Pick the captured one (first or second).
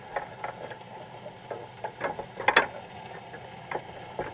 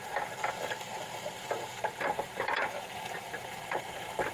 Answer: first